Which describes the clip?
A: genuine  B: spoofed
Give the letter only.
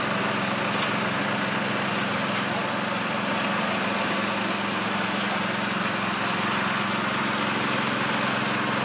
A